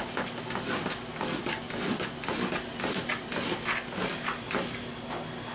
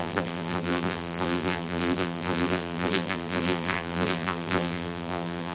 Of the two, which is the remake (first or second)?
second